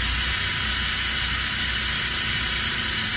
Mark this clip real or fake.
real